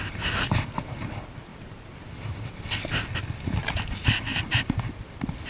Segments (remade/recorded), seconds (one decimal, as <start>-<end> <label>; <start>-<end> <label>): 0.0-1.5 recorded; 1.5-2.6 remade; 2.6-4.3 recorded; 4.3-4.9 remade; 4.9-5.5 recorded